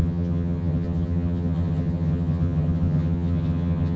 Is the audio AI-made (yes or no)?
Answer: yes